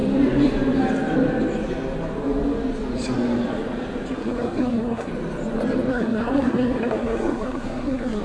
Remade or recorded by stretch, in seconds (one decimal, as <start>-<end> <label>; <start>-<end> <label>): 0.0-4.2 recorded; 4.2-5.1 remade; 5.1-5.9 recorded; 5.9-8.2 remade